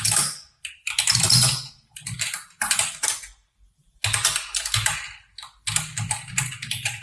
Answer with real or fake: real